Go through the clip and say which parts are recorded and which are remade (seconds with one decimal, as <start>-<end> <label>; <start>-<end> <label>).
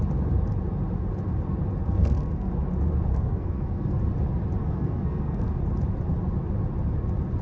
0.0-1.8 recorded; 1.8-2.5 remade; 2.5-3.1 recorded; 3.1-4.0 remade; 4.0-4.6 recorded; 4.6-5.5 remade; 5.5-7.4 recorded